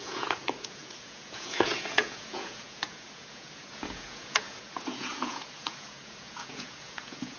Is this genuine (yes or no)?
no